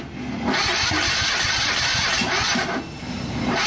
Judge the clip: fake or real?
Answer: real